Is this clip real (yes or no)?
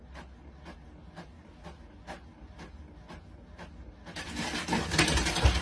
yes